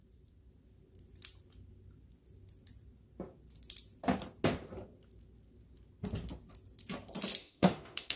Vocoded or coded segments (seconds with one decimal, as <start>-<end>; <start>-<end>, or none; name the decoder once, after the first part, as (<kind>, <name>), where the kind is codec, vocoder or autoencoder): 7.4-8.2 (autoencoder, DAC-VAE)